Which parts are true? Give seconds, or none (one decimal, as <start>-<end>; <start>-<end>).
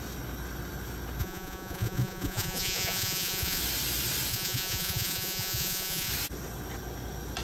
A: 0.0-1.2; 3.6-4.3; 6.1-7.4